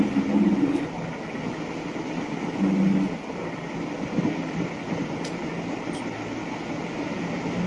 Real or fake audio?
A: real